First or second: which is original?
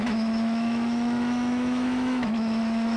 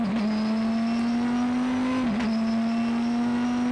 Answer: second